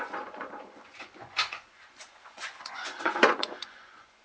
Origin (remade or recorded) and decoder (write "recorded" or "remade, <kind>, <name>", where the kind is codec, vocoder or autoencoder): remade, vocoder, Vocos